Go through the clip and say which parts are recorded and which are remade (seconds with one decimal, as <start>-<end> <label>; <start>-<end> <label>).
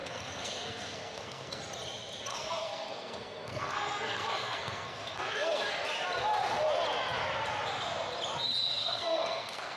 0.0-1.6 remade; 1.6-2.3 recorded; 2.3-5.8 remade; 5.8-8.8 recorded; 8.8-9.8 remade